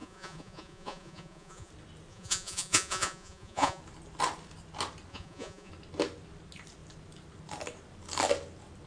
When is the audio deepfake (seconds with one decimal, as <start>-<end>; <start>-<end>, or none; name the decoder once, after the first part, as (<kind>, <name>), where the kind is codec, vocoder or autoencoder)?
0.0-1.7 (vocoder, Vocos); 2.1-3.8; 5.1-5.7